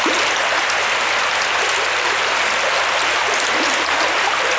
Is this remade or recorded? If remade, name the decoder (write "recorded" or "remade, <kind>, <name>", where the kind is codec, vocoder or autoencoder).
recorded